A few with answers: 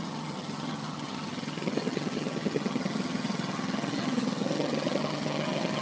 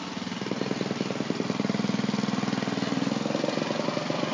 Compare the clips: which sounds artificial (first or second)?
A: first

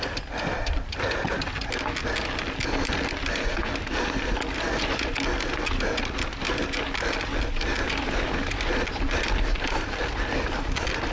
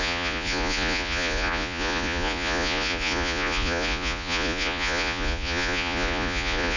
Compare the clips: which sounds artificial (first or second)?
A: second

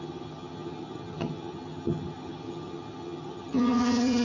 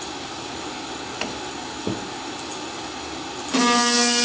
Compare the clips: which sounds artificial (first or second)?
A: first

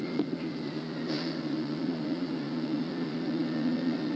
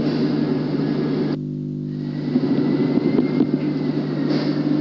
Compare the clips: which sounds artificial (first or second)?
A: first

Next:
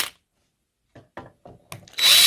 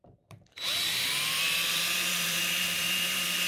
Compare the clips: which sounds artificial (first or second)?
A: second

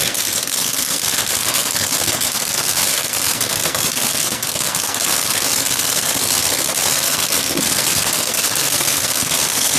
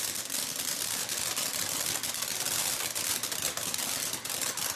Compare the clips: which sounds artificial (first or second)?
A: first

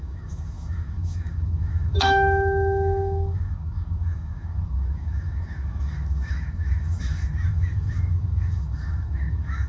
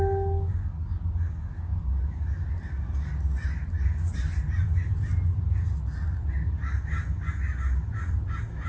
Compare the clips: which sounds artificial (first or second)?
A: first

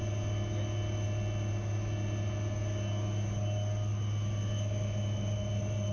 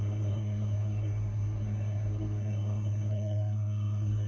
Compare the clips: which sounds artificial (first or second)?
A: second